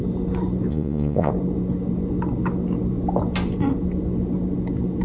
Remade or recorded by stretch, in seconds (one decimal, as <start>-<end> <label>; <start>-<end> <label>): 0.0-0.7 recorded; 0.7-1.3 remade; 1.3-5.0 recorded